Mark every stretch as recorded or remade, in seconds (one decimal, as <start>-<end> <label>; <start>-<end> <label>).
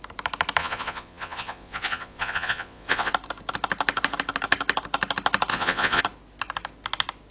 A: 0.0-0.6 recorded; 0.6-3.1 remade; 3.1-5.5 recorded; 5.5-6.0 remade; 6.0-7.3 recorded